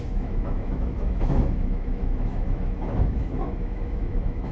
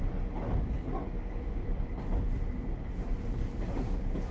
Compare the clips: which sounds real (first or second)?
second